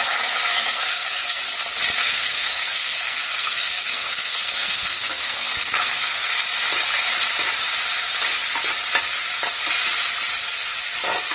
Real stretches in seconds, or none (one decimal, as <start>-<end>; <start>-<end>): 0.0-0.5; 1.4-2.0; 6.3-11.3